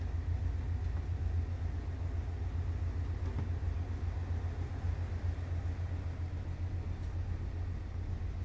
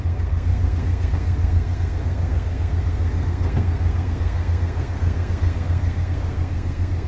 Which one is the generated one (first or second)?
second